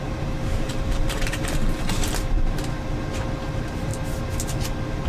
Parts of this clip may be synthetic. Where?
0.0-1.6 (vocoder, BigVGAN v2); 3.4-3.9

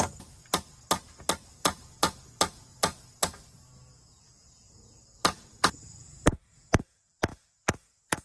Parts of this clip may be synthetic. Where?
0.0-0.4 (vocoder, Vocos); 1.5-8.2

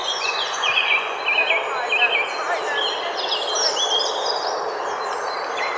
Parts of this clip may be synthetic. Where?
0.0-1.2 (vocoder, Vocos)

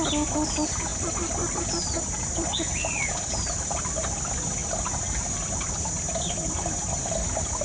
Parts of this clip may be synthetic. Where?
none

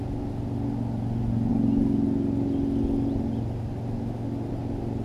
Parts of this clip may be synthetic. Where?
none